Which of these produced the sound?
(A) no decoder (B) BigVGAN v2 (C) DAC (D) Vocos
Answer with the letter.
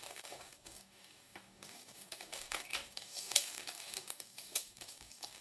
C